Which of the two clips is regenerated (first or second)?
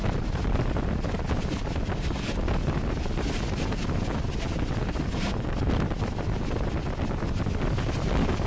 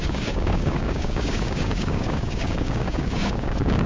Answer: second